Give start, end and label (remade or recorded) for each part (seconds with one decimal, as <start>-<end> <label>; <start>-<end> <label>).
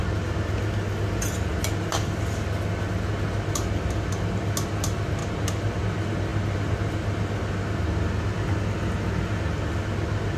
0.0-10.4 recorded